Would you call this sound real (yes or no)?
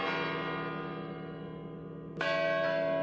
yes